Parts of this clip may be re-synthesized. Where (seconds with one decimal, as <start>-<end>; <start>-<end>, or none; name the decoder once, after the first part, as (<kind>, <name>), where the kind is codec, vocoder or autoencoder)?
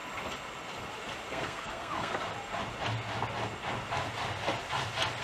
1.3-2.1 (codec, SNAC)